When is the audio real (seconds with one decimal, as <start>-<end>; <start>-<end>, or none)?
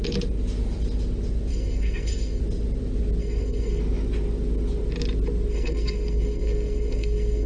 0.0-1.5; 2.4-3.2; 3.8-5.5